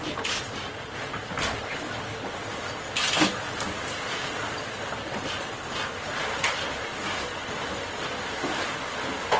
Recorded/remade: recorded